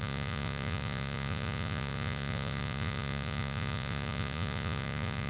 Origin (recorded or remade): remade